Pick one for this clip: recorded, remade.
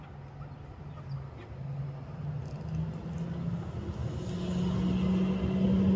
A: recorded